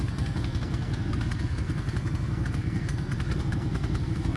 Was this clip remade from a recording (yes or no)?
yes